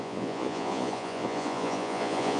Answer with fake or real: fake